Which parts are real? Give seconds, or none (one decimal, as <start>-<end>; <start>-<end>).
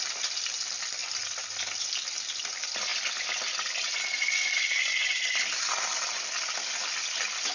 0.0-7.5